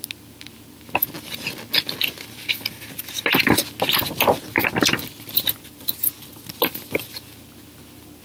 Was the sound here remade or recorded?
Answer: recorded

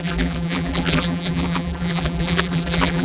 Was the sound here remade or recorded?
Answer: remade